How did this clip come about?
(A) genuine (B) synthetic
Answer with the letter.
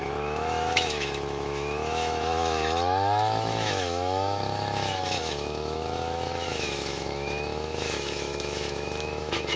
B